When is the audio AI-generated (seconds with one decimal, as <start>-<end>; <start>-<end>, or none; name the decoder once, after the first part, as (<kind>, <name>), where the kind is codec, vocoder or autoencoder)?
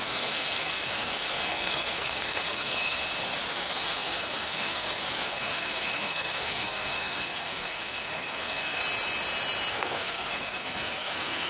0.0-3.0 (codec, SNAC); 3.5-8.8; 9.7-11.5